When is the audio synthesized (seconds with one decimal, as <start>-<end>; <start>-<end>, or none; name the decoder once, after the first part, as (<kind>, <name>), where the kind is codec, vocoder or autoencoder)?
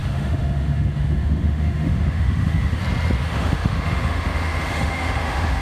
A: 0.0-2.8 (autoencoder, DAC-VAE); 3.2-5.6